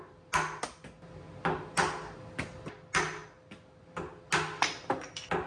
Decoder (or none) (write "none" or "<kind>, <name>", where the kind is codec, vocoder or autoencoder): none